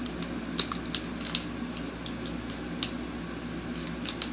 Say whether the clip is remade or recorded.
recorded